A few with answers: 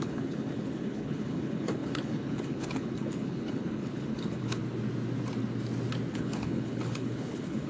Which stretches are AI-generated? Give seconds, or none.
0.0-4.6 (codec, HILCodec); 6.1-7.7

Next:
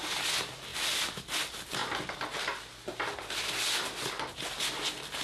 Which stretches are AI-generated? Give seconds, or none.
none

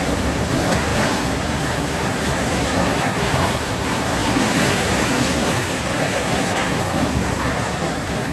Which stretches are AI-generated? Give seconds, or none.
0.0-8.3 (codec, SNAC)

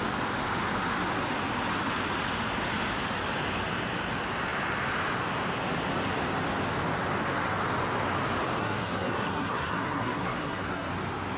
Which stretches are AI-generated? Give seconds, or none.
8.6-10.9 (codec, SNAC)

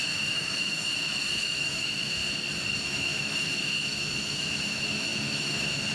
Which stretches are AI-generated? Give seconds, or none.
0.0-2.2 (autoencoder, DAC-VAE); 2.8-5.9

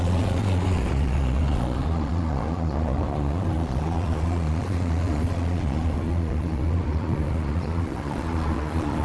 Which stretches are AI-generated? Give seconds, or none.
0.0-9.0 (vocoder, Vocos)

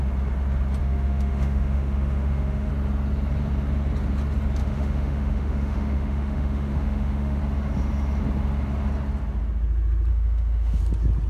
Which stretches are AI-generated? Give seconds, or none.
0.8-2.7 (autoencoder, DAC-VAE); 4.6-7.4; 10.1-10.8

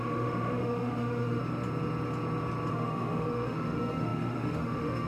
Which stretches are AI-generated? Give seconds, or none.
0.0-1.4 (autoencoder, DAC-VAE); 2.7-5.1